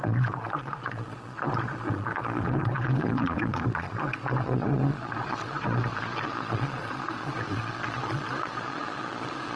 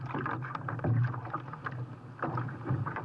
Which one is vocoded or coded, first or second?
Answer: first